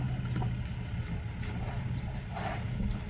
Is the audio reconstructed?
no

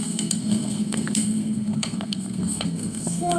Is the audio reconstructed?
yes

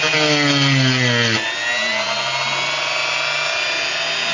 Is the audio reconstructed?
no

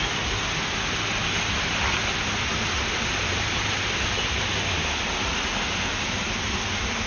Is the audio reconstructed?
no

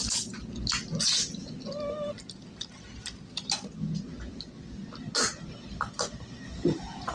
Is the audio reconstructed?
no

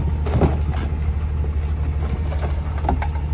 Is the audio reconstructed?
no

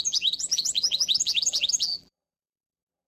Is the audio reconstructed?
yes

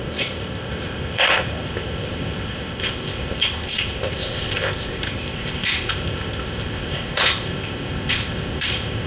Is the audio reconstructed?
yes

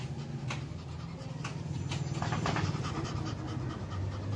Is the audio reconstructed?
no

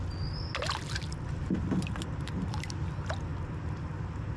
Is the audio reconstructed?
no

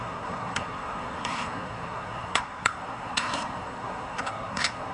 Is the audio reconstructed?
yes